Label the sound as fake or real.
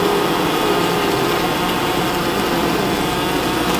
real